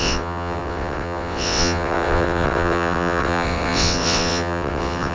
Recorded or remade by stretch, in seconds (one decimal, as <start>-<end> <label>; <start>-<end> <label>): 0.0-5.1 remade